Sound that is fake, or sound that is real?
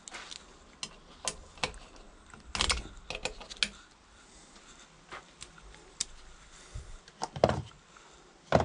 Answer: real